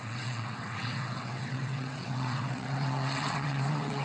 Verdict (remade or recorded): remade